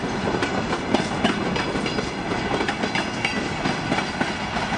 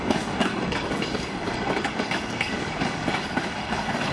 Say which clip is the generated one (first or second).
second